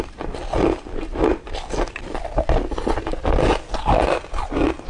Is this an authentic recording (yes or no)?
yes